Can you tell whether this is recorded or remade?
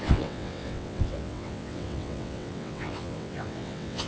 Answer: remade